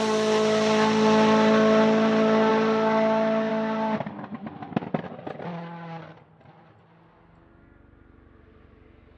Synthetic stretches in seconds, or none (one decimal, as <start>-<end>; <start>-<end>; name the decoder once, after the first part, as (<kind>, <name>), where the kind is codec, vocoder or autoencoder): none